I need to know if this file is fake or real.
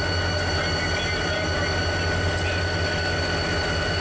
real